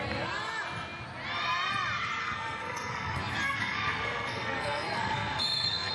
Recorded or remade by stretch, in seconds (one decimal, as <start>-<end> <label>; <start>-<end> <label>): 0.0-2.2 recorded; 2.2-5.9 remade